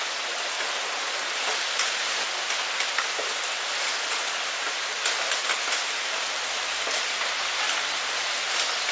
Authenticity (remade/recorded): recorded